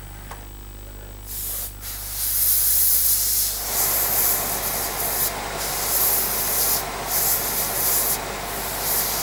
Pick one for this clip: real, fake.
real